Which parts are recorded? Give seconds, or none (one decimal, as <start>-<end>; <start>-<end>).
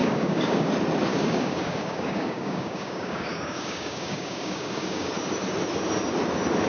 0.7-1.1; 5.1-6.7